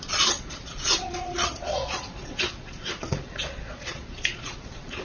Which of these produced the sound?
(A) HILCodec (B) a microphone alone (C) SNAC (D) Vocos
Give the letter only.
D